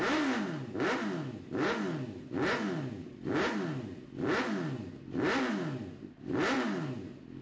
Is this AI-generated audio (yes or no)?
no